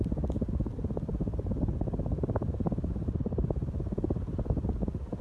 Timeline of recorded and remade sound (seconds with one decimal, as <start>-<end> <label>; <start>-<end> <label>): 0.0-5.2 recorded